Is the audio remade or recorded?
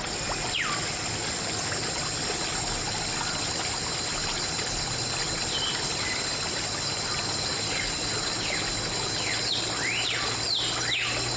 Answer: recorded